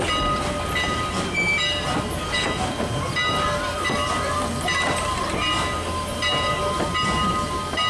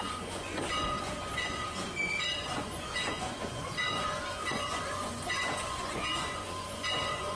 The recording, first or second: first